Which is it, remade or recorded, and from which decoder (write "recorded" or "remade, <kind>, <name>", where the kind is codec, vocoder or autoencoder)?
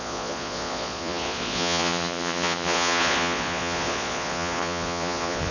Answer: remade, vocoder, Vocos